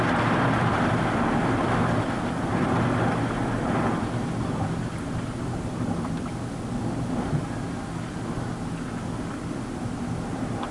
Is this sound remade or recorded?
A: recorded